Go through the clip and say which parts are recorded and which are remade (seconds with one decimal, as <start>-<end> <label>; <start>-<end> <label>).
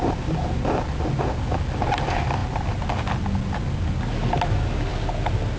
0.0-5.6 recorded